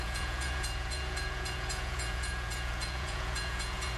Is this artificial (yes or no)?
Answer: yes